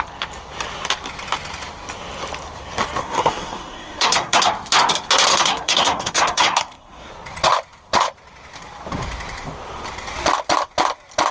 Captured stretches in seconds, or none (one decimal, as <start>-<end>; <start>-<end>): 0.0-3.0; 4.5-5.3; 7.1-11.3